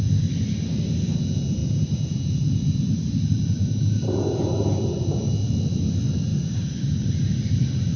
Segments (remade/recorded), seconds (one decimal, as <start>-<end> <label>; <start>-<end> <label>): 0.0-1.6 recorded; 1.6-5.3 remade; 5.3-6.3 recorded; 6.3-8.0 remade